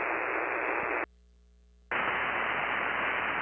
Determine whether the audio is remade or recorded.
recorded